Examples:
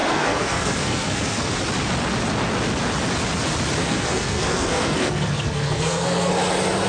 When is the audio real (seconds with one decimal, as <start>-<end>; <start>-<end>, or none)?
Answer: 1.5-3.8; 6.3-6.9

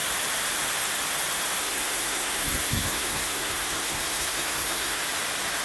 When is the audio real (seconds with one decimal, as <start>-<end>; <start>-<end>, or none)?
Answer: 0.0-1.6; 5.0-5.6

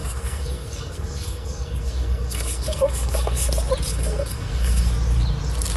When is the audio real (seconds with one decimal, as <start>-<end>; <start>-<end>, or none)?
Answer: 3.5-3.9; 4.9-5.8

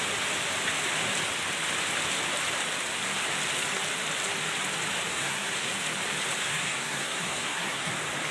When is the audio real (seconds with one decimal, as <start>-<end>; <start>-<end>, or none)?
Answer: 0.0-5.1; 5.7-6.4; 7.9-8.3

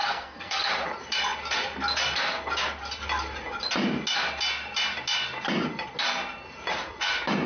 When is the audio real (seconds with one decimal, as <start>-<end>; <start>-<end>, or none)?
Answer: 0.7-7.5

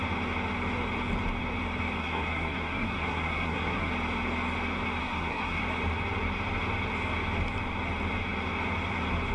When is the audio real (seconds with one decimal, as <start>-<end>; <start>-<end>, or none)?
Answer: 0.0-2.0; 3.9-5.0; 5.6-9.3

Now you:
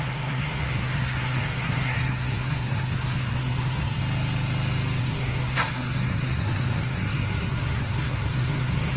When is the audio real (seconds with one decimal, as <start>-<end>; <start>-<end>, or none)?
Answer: 4.0-5.0

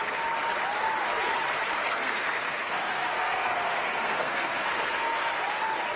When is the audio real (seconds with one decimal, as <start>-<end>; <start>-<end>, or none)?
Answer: 0.0-1.8; 5.4-6.0